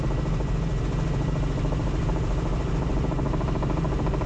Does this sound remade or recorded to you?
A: recorded